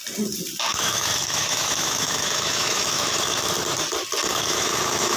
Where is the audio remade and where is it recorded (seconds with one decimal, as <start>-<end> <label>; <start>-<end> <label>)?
0.0-0.7 recorded; 0.7-3.5 remade; 3.5-4.3 recorded; 4.3-5.2 remade